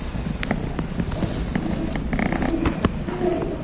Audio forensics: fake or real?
real